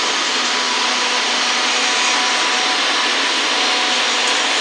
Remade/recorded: recorded